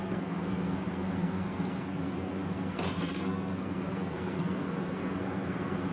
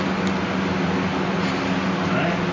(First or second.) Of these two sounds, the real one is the second